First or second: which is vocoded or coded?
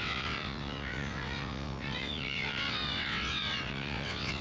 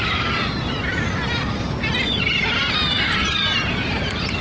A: first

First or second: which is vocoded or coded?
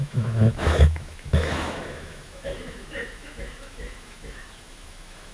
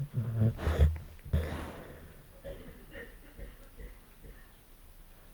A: first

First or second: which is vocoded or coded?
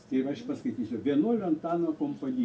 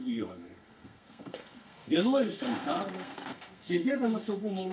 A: second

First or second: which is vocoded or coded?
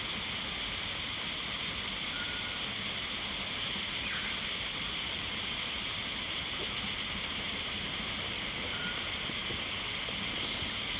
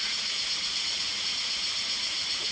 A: second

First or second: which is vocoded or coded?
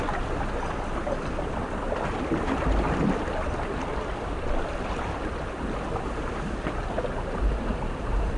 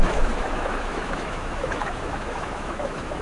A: second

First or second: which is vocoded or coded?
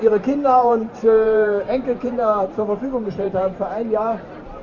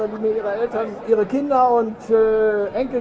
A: first